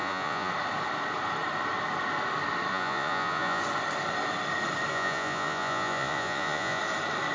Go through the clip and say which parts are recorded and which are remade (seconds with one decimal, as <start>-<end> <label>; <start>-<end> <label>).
0.0-0.5 remade; 0.5-2.7 recorded; 2.7-3.6 remade; 3.6-4.9 recorded; 4.9-6.8 remade; 6.8-7.3 recorded